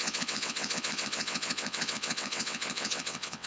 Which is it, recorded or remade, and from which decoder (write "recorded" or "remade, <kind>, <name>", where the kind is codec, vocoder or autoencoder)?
remade, vocoder, WaveNeXt